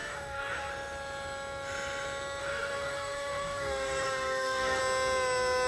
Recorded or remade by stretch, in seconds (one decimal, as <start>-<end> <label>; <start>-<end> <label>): 0.0-0.7 remade; 0.7-2.4 recorded; 2.4-4.8 remade; 4.8-5.7 recorded